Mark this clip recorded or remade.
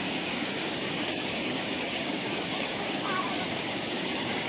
remade